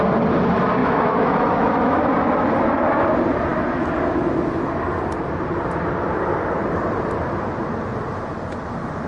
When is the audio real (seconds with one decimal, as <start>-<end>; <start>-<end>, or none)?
0.0-0.8; 2.1-9.1